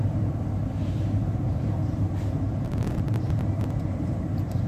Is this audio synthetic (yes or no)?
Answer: yes